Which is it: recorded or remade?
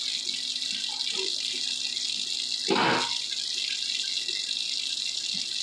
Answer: recorded